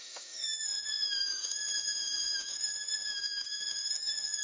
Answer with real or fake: fake